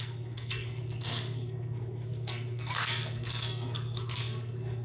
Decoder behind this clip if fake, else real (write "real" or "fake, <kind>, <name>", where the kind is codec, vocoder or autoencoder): fake, codec, SNAC